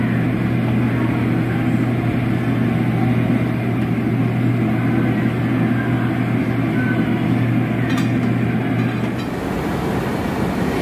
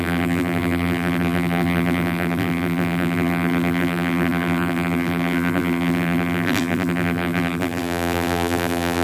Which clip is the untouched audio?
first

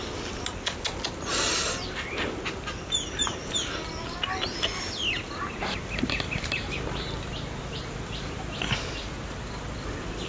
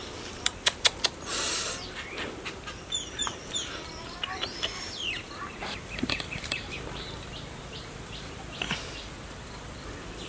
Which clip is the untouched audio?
first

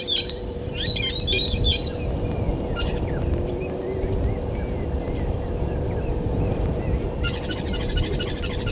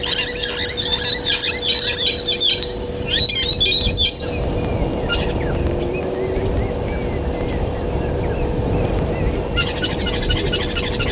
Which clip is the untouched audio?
second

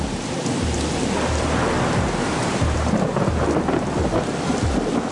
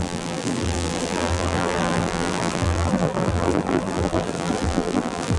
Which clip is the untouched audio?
first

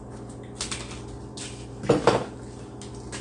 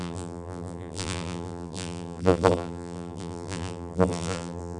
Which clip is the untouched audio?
first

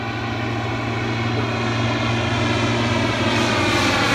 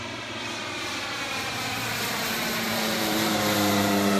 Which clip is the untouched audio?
first